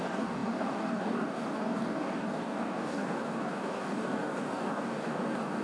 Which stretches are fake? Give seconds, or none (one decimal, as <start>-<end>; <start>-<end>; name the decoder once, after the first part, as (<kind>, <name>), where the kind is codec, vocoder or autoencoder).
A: 0.0-5.6 (codec, DAC)